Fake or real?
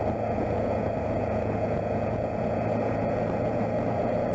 fake